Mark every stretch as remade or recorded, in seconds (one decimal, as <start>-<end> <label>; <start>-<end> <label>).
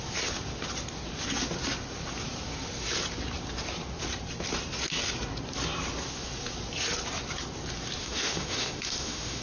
0.0-8.0 recorded; 8.0-9.4 remade